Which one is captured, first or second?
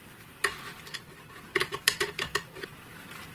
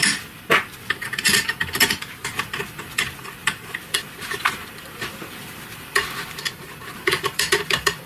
first